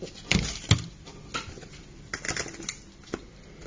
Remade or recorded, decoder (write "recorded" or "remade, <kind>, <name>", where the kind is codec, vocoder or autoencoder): recorded